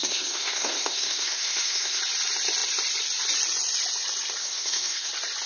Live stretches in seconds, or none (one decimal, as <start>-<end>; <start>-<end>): 2.0-4.4; 5.1-5.5